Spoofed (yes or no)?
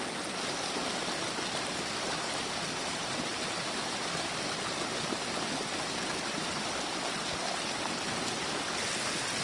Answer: no